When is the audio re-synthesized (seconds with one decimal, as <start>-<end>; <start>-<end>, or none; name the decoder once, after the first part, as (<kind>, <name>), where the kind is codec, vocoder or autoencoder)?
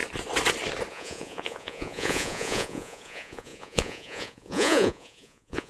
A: 0.9-5.7 (vocoder, Vocos)